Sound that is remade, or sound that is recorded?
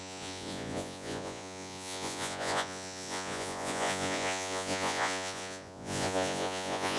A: remade